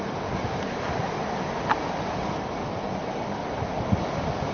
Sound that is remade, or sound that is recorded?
recorded